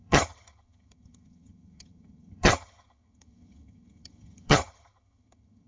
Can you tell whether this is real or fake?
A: fake